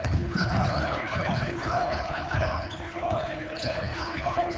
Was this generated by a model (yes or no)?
yes